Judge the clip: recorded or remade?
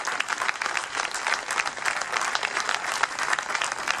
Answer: recorded